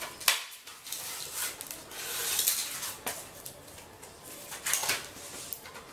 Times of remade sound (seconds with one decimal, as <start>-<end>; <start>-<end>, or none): none